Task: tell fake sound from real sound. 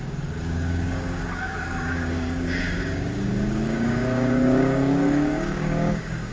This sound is fake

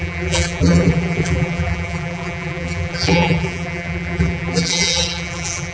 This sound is fake